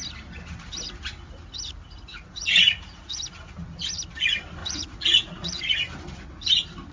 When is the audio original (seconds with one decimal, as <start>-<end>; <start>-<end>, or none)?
0.0-2.1; 3.2-4.6; 5.6-6.9